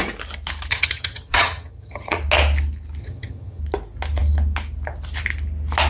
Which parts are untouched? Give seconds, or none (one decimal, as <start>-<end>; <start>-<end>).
0.0-0.7; 2.2-3.0; 3.6-5.9